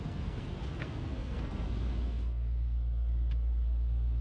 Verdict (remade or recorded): remade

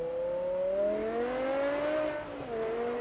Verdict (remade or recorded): recorded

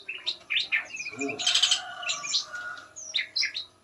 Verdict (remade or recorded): recorded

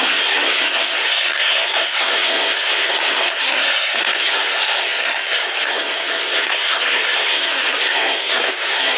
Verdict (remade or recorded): remade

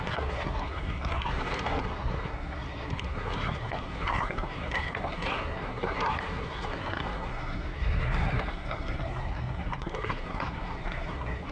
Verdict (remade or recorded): remade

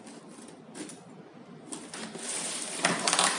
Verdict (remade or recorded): recorded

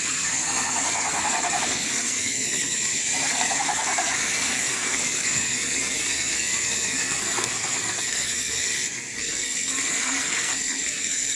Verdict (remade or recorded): remade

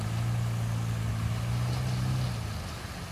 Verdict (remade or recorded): recorded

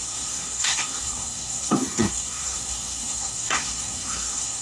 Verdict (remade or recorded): remade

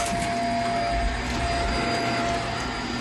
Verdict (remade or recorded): recorded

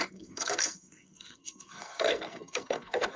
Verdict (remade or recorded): remade